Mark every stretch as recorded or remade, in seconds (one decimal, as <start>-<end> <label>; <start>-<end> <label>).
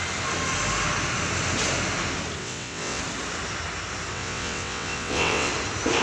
0.0-2.4 recorded; 2.4-3.0 remade; 3.0-4.1 recorded; 4.1-5.5 remade; 5.5-6.0 recorded